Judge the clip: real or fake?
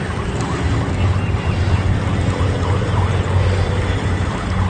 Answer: real